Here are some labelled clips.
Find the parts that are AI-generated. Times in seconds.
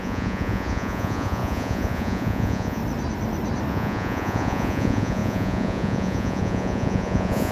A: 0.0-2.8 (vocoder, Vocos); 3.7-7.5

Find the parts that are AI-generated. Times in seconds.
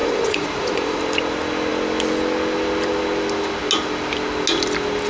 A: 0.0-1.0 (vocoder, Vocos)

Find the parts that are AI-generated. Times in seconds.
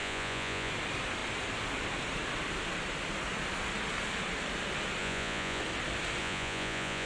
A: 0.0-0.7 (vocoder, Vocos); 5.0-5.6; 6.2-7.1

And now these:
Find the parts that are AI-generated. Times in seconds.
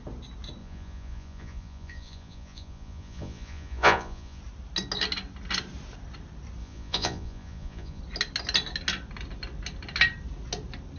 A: 0.6-4.4 (vocoder, Vocos); 6.6-8.0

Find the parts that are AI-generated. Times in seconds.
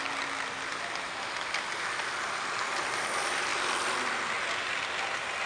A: none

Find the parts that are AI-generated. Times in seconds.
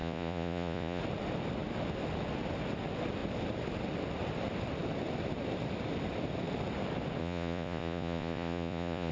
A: 0.0-1.0 (vocoder, Vocos); 7.2-9.1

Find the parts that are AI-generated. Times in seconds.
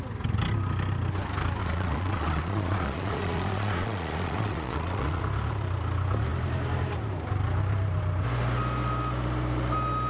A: 1.6-5.2 (vocoder, Vocos)